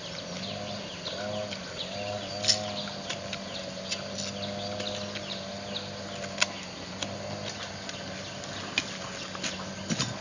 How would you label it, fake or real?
real